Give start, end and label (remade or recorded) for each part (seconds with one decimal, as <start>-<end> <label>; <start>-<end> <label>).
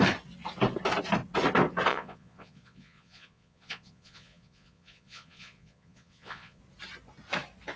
0.0-1.9 recorded; 1.9-6.6 remade; 6.6-7.8 recorded